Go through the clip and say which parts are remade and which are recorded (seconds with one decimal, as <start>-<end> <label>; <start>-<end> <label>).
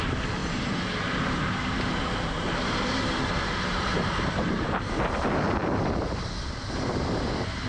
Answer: 0.0-0.4 recorded; 0.4-4.9 remade; 4.9-7.7 recorded